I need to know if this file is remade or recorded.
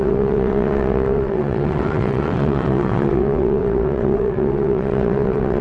remade